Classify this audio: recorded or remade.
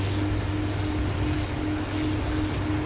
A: recorded